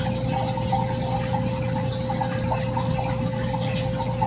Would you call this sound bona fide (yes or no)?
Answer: yes